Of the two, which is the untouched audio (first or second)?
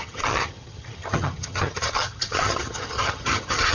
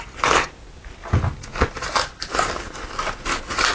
second